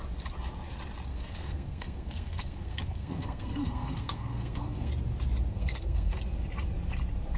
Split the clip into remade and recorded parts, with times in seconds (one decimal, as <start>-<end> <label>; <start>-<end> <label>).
0.0-1.1 recorded; 1.1-4.9 remade; 4.9-5.5 recorded; 5.5-6.2 remade; 6.2-7.4 recorded